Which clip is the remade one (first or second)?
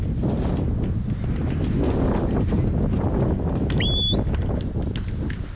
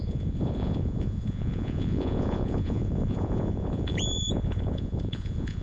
second